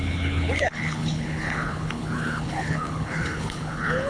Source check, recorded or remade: remade